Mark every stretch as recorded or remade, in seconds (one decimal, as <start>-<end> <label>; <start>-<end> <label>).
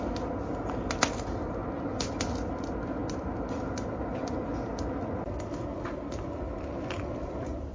0.0-7.7 recorded